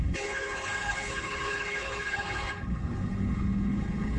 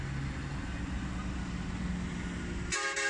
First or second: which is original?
second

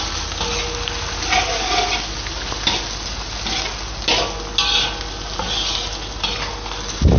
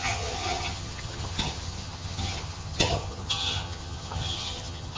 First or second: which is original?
first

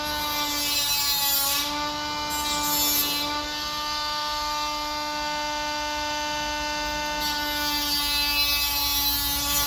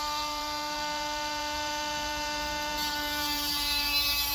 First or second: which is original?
first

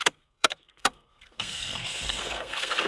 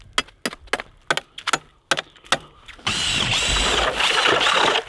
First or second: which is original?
second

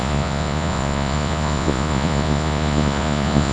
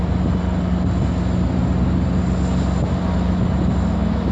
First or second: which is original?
second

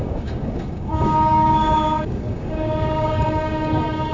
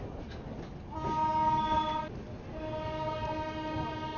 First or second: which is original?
second